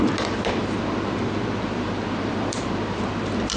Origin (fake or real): fake